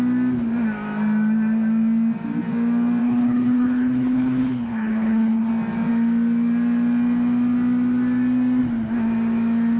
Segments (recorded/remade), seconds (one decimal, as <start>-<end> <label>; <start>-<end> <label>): 0.0-3.0 recorded; 3.0-5.5 remade; 5.5-9.8 recorded